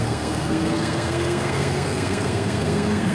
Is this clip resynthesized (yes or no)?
yes